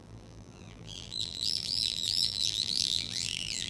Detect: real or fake fake